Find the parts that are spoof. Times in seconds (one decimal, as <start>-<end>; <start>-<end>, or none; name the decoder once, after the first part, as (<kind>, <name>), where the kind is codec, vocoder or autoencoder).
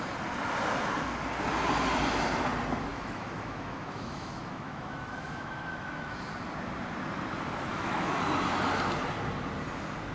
2.9-6.1 (autoencoder, DAC-VAE); 7.7-8.2